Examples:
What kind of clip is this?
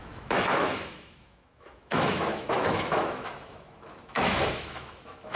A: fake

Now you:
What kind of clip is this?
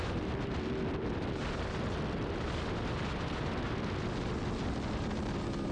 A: real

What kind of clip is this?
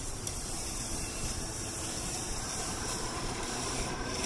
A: fake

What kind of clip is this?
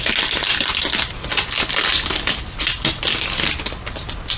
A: real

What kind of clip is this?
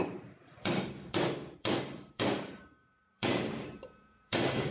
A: fake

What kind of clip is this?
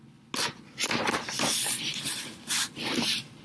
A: real